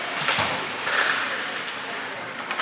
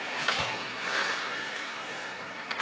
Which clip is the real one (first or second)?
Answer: first